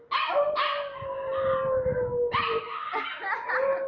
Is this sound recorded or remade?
recorded